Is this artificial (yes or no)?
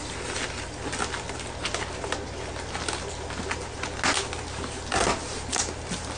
no